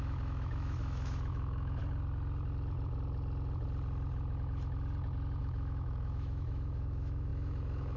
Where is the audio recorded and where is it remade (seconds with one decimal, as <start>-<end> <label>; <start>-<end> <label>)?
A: 0.0-1.8 remade; 1.8-5.4 recorded; 5.4-8.0 remade